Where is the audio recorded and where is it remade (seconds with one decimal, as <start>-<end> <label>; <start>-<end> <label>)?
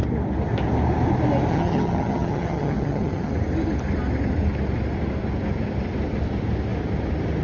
0.0-1.5 recorded; 1.5-3.3 remade; 3.3-7.4 recorded